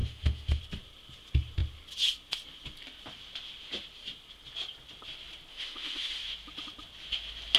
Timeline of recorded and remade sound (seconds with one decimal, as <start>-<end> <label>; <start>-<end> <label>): 0.0-0.6 remade; 0.6-5.5 recorded; 5.5-6.2 remade; 6.2-7.6 recorded